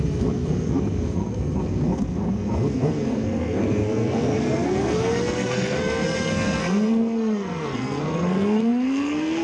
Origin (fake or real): fake